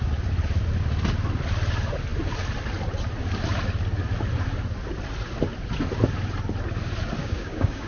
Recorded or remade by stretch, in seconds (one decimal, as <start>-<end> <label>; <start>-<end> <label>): 0.0-7.2 recorded; 7.2-7.9 remade